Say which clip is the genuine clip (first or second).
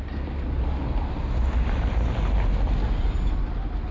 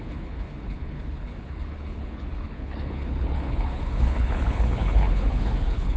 first